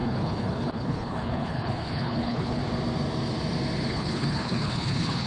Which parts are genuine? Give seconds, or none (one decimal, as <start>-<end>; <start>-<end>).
2.6-3.9